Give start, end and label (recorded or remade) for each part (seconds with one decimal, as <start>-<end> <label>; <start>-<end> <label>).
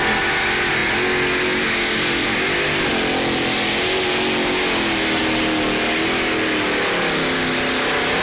0.0-8.2 recorded